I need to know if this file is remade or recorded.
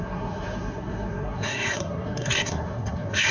remade